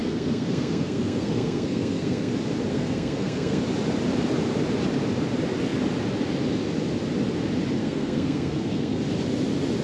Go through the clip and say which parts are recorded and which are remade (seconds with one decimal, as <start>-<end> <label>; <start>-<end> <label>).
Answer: 0.0-2.3 remade; 2.3-2.7 recorded; 2.7-3.6 remade; 3.6-7.8 recorded; 7.8-9.0 remade; 9.0-9.8 recorded